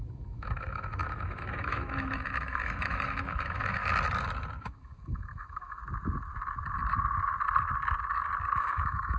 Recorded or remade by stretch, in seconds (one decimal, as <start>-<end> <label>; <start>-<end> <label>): 0.0-3.8 remade; 3.8-4.6 recorded; 4.6-5.8 remade; 5.8-8.6 recorded; 8.6-9.2 remade